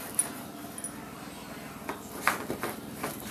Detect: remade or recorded recorded